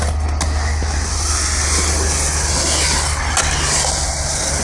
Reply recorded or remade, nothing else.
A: recorded